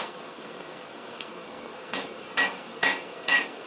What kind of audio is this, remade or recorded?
remade